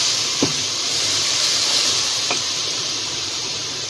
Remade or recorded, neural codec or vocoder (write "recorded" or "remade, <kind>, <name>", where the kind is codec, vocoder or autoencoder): remade, vocoder, BigVGAN v2